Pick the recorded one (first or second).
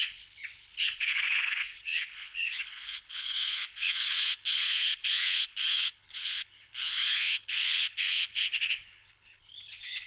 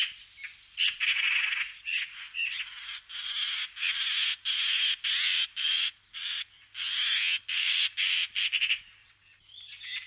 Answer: second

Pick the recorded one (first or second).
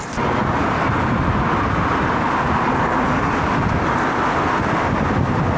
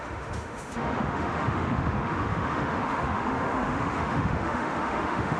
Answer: first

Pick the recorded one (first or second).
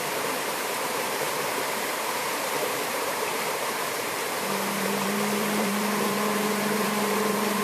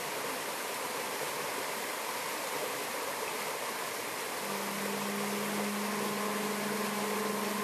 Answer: second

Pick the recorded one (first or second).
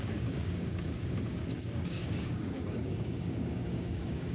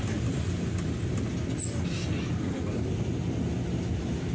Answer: second